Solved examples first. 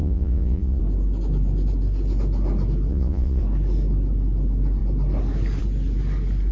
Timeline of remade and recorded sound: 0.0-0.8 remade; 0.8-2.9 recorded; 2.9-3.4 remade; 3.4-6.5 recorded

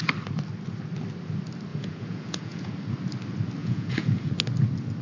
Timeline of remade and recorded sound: 0.0-1.7 recorded; 1.7-2.7 remade; 2.7-3.6 recorded; 3.6-4.3 remade; 4.3-5.0 recorded